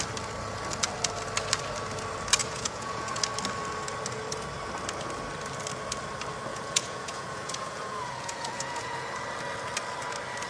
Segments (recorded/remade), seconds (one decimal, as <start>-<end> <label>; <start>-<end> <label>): 0.0-2.4 recorded; 2.4-3.2 remade; 3.2-6.5 recorded; 6.5-9.1 remade; 9.1-10.5 recorded